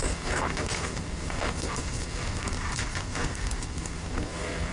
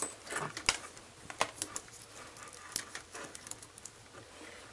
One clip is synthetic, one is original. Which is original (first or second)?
second